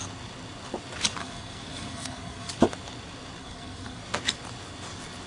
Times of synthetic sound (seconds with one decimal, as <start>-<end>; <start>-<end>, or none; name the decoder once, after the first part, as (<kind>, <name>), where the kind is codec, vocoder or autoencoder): 1.2-2.5 (codec, SNAC); 3.4-4.0